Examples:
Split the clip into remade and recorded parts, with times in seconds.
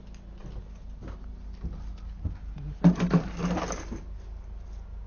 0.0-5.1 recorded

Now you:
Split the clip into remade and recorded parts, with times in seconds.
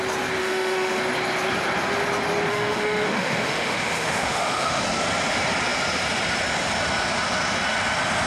0.0-0.4 recorded; 0.4-1.0 remade; 1.0-2.5 recorded; 2.5-4.8 remade; 4.8-8.3 recorded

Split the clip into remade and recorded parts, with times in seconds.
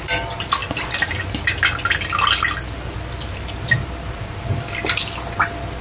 0.0-5.8 recorded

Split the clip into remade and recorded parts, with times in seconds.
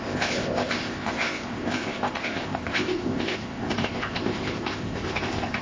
0.0-5.6 remade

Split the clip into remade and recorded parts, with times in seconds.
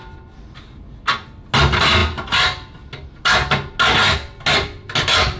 0.0-5.4 recorded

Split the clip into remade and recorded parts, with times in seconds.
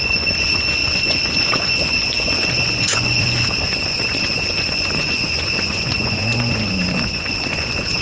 0.0-8.0 remade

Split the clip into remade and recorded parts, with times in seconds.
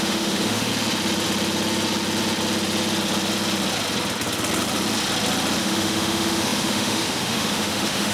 0.0-0.7 remade; 0.7-5.6 recorded; 5.6-8.1 remade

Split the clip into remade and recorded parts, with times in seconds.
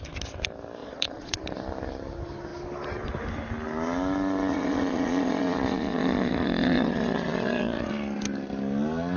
0.0-0.8 recorded; 0.8-1.4 remade; 1.4-4.5 recorded; 4.5-7.9 remade; 7.9-9.2 recorded